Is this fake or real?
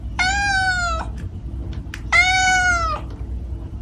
real